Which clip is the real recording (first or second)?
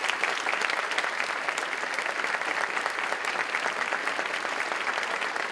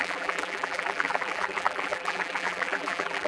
first